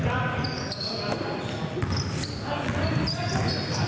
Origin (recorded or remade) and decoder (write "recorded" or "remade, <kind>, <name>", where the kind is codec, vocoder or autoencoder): recorded